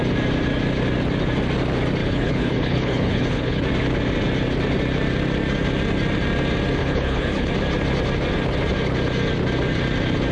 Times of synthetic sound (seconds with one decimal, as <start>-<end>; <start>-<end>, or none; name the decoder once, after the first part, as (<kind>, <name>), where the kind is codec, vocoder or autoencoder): 2.0-3.6 (codec, HILCodec); 6.8-7.5